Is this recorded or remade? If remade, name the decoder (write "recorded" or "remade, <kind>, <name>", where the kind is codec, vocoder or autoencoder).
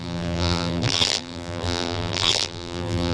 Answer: remade, vocoder, BigVGAN v2